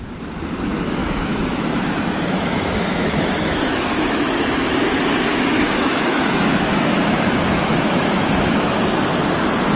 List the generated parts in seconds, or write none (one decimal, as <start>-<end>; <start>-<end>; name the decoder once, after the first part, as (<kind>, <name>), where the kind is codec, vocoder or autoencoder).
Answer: 1.0-4.8 (autoencoder, DAC-VAE); 5.3-8.7